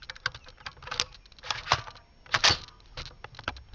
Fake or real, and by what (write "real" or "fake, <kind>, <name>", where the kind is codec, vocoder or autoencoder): real